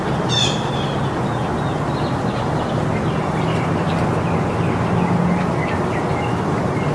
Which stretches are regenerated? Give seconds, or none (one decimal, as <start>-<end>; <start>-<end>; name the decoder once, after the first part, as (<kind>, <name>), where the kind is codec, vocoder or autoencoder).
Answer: none